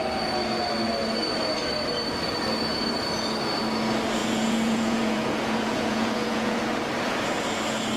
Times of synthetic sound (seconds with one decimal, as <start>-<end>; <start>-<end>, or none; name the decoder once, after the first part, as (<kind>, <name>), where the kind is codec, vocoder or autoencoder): 4.2-6.6 (vocoder, Vocos)